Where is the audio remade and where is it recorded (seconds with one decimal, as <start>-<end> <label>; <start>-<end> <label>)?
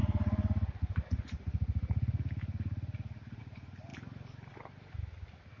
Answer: 0.0-5.6 recorded